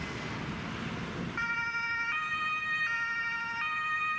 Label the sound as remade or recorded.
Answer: recorded